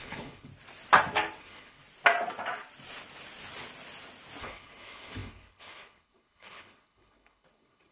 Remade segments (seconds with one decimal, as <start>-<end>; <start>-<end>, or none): 0.0-0.5; 1.4-1.8; 4.4-7.9

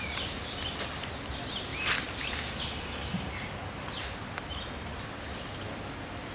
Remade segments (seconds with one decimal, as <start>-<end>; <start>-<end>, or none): none